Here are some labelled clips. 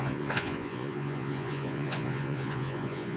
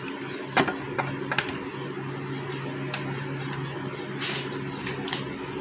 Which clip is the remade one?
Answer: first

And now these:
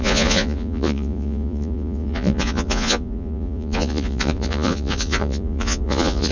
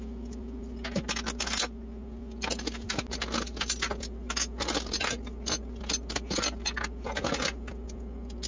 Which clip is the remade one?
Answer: first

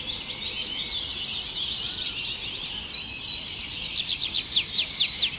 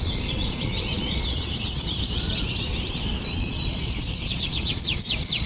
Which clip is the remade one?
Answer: second